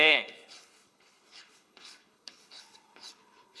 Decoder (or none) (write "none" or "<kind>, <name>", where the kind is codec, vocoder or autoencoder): codec, HILCodec